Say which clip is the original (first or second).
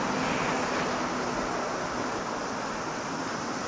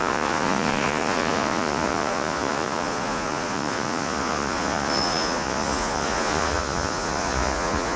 first